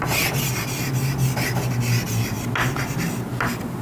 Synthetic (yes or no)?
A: no